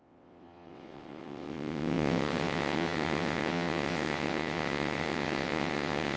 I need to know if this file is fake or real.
fake